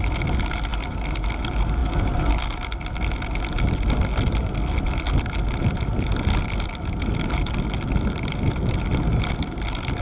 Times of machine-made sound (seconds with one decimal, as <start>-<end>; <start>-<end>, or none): none